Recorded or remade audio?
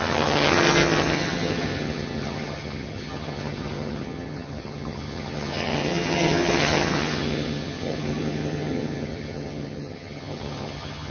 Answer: remade